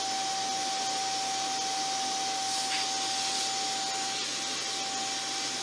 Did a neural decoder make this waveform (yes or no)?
no